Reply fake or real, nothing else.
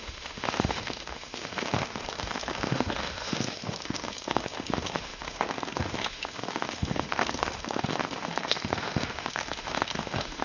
fake